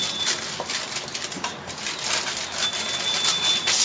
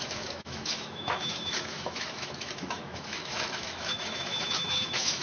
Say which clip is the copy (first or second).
second